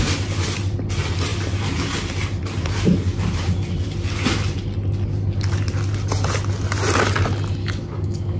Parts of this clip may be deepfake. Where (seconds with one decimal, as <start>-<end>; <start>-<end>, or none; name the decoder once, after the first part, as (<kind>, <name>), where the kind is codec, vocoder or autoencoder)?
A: 7.6-8.4 (codec, DAC)